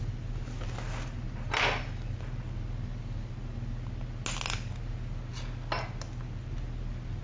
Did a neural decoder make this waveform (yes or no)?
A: no